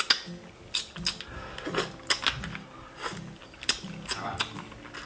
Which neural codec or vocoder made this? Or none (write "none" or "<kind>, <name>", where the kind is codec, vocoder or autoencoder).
none